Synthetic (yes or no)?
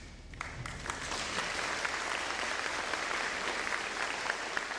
no